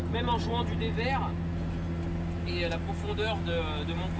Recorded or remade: recorded